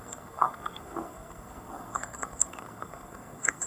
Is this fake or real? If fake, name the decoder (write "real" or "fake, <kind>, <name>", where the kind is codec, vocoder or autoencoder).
fake, codec, SNAC